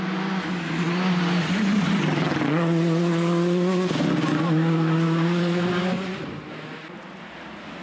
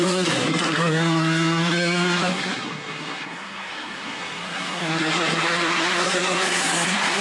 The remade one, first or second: second